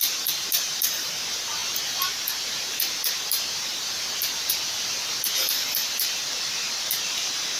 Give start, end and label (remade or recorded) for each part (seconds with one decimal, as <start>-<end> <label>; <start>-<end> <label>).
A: 0.0-6.2 remade; 6.2-7.6 recorded